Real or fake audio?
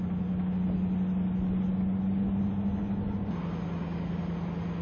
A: real